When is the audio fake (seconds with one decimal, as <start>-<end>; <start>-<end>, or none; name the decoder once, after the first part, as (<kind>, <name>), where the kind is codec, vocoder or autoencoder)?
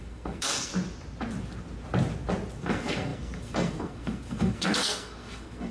0.0-0.7 (codec, SNAC); 2.6-5.7